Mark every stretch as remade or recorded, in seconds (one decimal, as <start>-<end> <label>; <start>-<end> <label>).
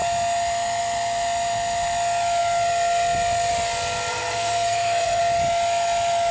0.0-4.1 recorded; 4.1-5.2 remade; 5.2-6.3 recorded